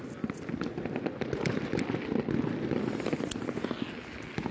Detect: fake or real real